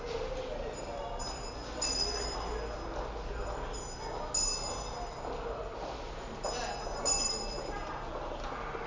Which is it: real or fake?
real